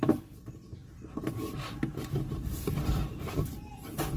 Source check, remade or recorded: remade